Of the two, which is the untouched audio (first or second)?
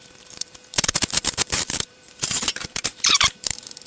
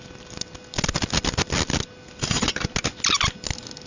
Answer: second